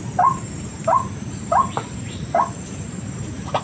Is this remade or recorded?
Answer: recorded